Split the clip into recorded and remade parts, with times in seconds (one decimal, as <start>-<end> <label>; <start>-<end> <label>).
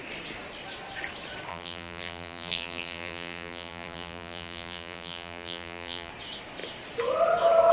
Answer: 0.0-1.5 recorded; 1.5-6.1 remade; 6.1-7.7 recorded